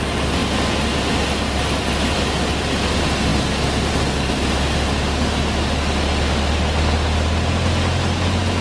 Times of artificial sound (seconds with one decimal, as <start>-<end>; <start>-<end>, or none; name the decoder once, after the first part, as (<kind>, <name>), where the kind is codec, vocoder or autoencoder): none